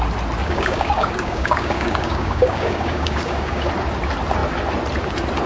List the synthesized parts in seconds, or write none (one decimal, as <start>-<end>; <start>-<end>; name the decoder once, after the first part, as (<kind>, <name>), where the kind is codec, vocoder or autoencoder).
0.4-3.7 (codec, DAC)